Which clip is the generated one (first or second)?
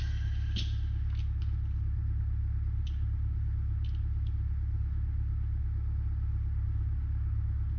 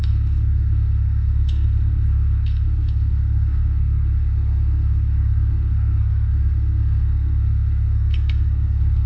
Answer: second